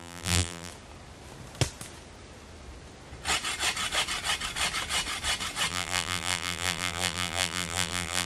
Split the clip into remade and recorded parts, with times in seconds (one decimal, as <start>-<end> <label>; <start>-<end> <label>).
0.0-0.7 remade; 0.7-5.7 recorded; 5.7-8.3 remade